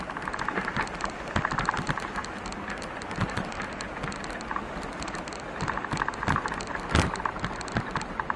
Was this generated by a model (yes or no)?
no